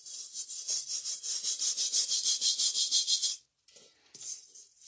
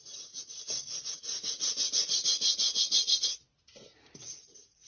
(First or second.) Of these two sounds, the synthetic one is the second